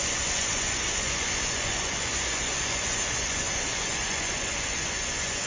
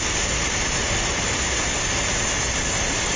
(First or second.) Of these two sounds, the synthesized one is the first